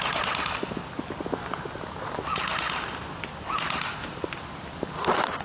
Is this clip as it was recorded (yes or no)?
yes